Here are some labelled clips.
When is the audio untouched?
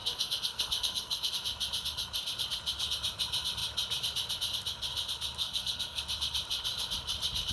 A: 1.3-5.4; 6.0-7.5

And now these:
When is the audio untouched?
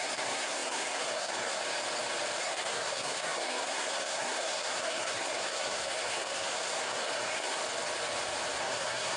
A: 1.6-2.4; 7.6-8.6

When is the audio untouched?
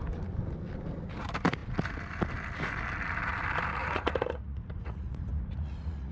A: 0.0-3.8